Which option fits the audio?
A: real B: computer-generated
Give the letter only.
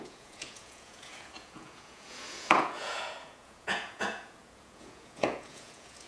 B